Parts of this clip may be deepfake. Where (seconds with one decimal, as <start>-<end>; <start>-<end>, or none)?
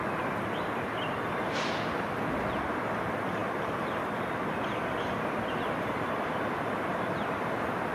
0.0-7.9